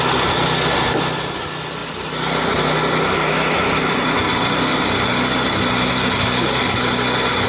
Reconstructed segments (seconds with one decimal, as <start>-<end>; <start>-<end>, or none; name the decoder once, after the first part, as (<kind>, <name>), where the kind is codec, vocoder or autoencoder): none